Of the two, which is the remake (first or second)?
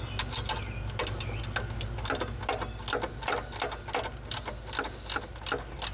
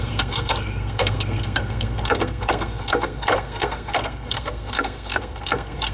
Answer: second